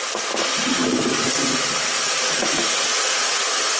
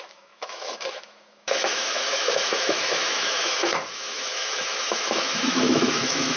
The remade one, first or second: second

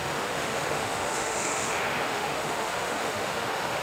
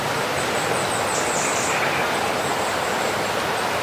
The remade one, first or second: first